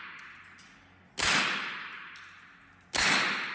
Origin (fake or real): real